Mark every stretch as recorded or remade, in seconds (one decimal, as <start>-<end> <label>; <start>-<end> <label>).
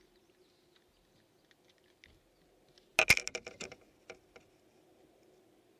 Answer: 0.0-5.8 recorded